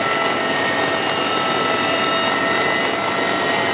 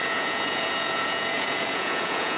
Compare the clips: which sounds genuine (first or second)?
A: first